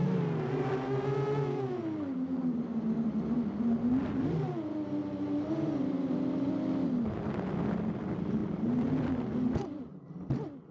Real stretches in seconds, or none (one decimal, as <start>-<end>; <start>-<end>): 0.0-5.0; 6.5-8.4; 9.1-10.7